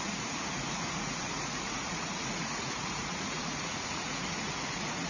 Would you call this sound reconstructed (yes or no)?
yes